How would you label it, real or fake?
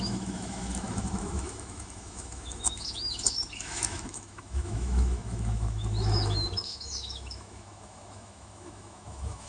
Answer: fake